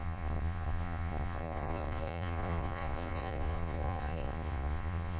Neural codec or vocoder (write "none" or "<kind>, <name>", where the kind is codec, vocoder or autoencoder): vocoder, Vocos